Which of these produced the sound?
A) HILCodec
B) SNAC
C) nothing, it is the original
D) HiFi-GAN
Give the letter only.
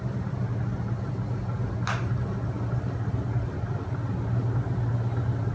C